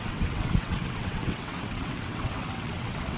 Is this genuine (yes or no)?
no